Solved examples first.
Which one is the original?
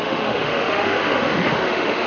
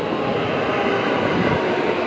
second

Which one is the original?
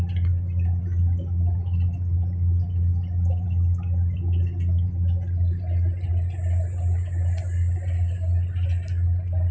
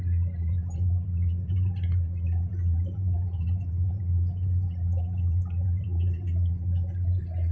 first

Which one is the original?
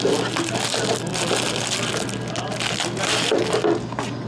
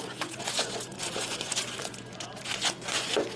first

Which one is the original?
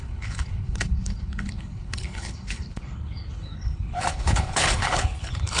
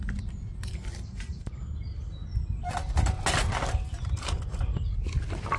second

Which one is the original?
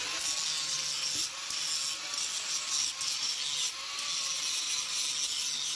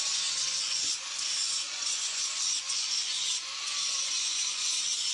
first